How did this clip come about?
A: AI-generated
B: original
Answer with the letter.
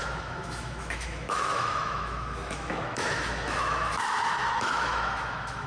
A